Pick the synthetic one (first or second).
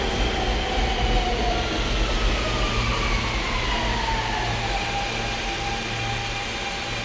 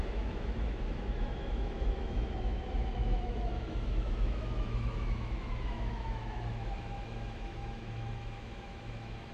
second